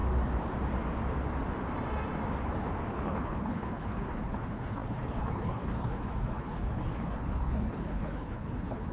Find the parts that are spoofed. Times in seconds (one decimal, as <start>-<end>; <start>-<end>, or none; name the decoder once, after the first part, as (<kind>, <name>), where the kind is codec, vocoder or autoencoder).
2.9-8.9 (codec, HILCodec)